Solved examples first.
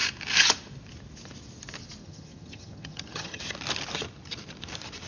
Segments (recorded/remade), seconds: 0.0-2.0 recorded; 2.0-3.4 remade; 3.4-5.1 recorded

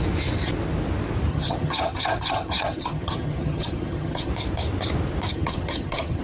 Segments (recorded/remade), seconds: 0.0-1.3 recorded; 1.3-4.3 remade; 4.3-5.3 recorded; 5.3-6.2 remade

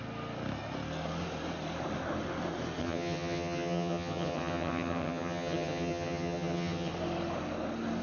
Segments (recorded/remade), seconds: 0.0-2.8 recorded; 2.8-6.9 remade; 6.9-8.0 recorded

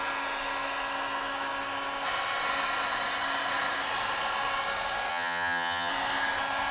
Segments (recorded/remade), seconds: 0.0-5.1 recorded; 5.1-5.9 remade; 5.9-6.7 recorded

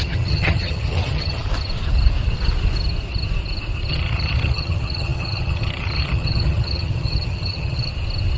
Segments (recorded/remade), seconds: 0.0-1.4 remade; 1.4-3.9 recorded; 3.9-7.9 remade; 7.9-8.4 recorded